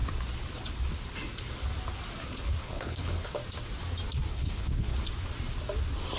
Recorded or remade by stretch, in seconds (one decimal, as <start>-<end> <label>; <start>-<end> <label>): 0.0-2.6 recorded; 2.6-3.4 remade; 3.4-4.3 recorded; 4.3-4.9 remade; 4.9-6.2 recorded

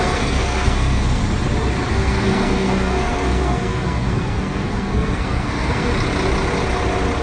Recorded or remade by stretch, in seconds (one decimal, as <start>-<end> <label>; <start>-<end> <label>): 0.0-1.2 remade; 1.2-1.9 recorded; 1.9-5.9 remade; 5.9-7.2 recorded

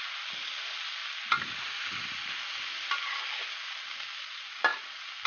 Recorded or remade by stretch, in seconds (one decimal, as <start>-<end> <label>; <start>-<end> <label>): 0.0-5.3 recorded

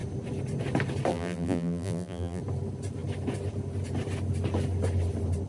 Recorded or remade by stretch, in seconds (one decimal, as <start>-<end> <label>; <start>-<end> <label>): 0.0-1.1 recorded; 1.1-2.4 remade; 2.4-5.5 recorded

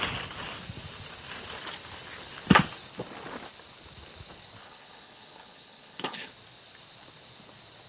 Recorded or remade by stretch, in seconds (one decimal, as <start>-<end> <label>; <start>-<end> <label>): 0.0-4.6 recorded; 4.6-6.3 remade; 6.3-7.9 recorded

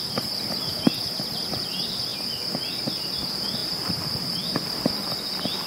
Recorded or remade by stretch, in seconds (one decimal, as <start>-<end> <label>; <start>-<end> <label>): 0.0-5.7 recorded

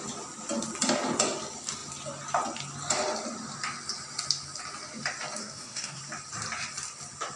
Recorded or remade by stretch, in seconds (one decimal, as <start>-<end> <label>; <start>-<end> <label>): 0.0-5.4 recorded; 5.4-6.0 remade; 6.0-7.4 recorded

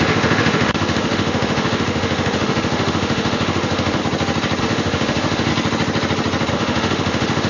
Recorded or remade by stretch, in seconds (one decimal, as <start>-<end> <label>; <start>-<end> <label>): 0.0-4.0 remade; 4.0-4.6 recorded; 4.6-5.5 remade; 5.5-6.5 recorded; 6.5-7.5 remade